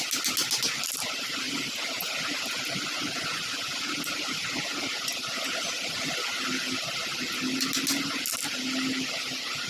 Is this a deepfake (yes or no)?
no